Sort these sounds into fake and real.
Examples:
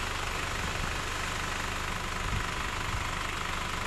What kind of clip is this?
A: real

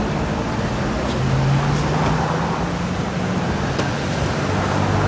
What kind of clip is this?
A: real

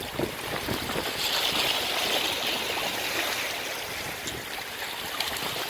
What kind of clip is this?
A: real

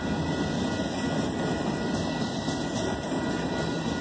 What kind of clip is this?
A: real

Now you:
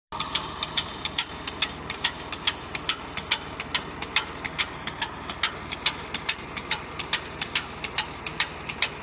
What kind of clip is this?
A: real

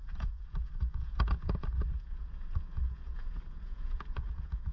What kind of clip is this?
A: fake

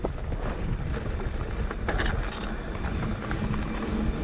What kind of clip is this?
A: real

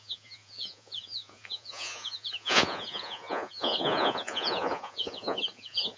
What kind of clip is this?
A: fake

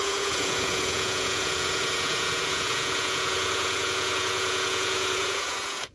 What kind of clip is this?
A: fake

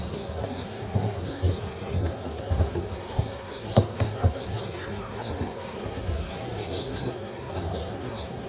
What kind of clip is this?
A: fake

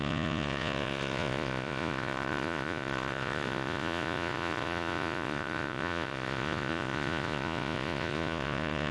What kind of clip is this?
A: fake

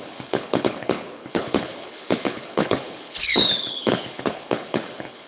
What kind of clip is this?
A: fake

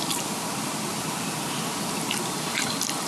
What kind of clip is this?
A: real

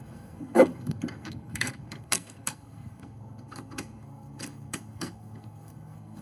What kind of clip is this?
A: fake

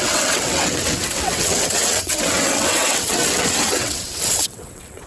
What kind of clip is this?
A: fake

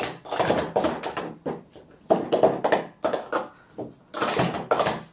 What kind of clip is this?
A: real